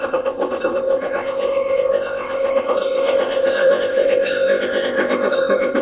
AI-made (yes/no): yes